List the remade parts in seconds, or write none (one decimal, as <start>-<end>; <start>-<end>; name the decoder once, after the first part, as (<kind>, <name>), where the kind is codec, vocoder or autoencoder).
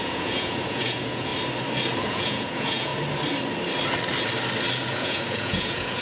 0.0-1.3 (vocoder, Vocos); 2.0-2.9; 4.9-6.0